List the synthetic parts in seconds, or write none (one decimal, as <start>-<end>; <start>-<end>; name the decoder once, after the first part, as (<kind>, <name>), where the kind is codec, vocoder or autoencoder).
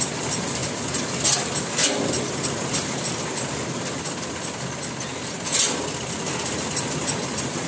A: none